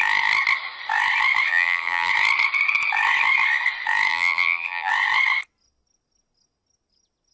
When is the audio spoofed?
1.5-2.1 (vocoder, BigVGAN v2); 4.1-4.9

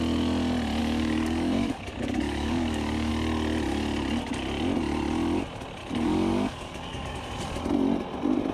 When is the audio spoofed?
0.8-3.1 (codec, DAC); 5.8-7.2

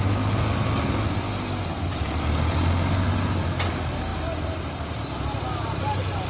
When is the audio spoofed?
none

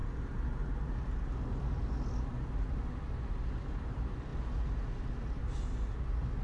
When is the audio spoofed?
none